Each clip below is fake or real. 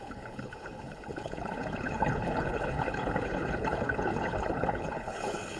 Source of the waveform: fake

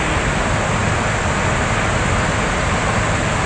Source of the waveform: real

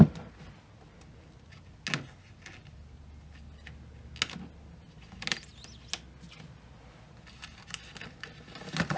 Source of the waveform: real